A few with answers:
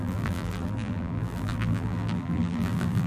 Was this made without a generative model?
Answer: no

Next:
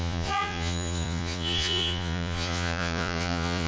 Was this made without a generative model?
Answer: no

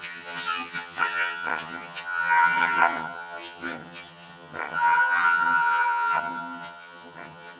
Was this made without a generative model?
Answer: no